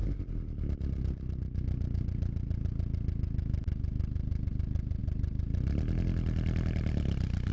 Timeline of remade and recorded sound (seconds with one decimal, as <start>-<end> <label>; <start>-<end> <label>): 0.0-7.5 recorded